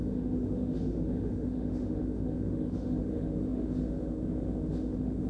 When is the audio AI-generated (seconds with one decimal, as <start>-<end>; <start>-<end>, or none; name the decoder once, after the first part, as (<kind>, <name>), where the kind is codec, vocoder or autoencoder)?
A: 0.0-5.3 (autoencoder, DAC-VAE)